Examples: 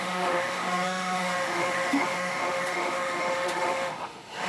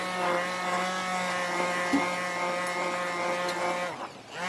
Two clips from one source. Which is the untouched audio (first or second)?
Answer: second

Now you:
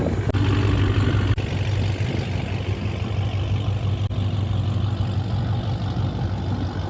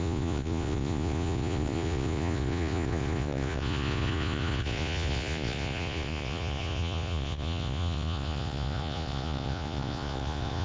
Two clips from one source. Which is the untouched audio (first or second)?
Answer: first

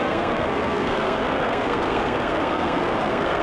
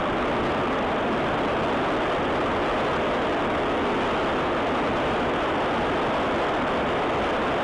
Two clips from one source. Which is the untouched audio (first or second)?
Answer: second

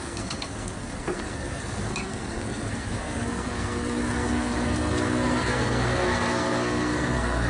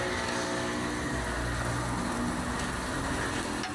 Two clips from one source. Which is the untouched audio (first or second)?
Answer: second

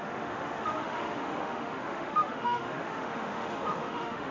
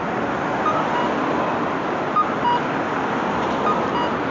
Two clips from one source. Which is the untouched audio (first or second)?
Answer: second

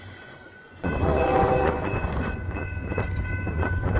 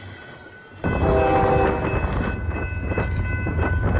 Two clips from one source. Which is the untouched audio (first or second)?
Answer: second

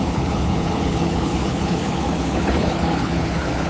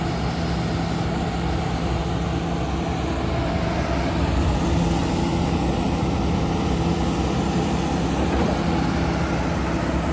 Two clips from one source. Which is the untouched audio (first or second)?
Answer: second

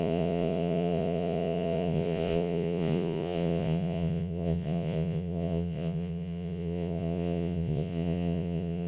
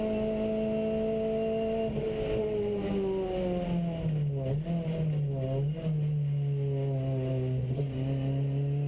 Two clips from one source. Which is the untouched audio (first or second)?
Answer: second